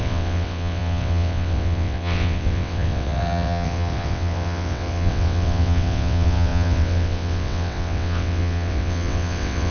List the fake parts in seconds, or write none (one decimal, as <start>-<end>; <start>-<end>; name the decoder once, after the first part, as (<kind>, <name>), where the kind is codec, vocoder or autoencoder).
0.0-9.7 (vocoder, WaveNeXt)